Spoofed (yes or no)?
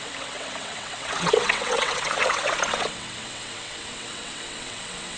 yes